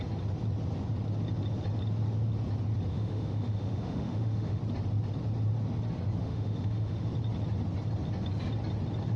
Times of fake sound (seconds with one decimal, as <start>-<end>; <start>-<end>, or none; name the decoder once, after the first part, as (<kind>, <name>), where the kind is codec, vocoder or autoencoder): 2.9-4.6 (autoencoder, DAC-VAE); 6.2-7.1